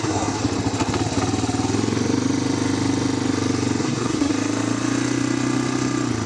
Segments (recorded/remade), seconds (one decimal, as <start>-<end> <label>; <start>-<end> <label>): 0.0-0.4 remade; 0.4-3.8 recorded; 3.8-4.3 remade; 4.3-6.3 recorded